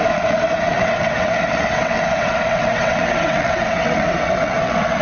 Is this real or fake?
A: fake